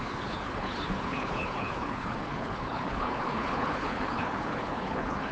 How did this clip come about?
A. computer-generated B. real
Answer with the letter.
A